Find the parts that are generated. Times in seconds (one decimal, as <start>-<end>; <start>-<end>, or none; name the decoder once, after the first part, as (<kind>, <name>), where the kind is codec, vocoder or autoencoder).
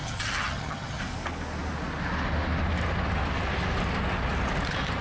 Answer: 0.0-1.0 (vocoder, HiFi-GAN)